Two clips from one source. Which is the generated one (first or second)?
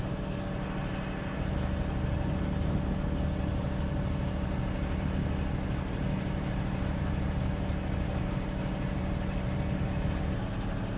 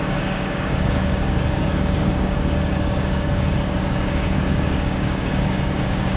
second